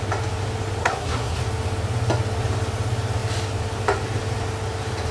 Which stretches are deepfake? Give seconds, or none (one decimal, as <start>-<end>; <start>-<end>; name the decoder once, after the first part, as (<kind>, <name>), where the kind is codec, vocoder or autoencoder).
0.8-1.4 (codec, SNAC)